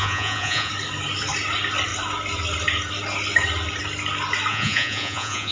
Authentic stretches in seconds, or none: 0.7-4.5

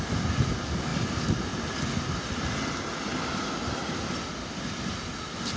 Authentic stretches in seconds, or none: 0.0-5.6

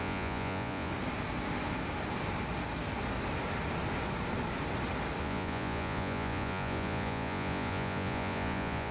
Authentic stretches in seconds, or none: 0.9-5.2